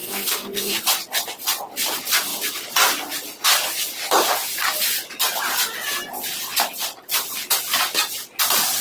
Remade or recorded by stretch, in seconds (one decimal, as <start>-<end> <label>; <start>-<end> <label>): 0.0-0.8 remade; 0.8-8.8 recorded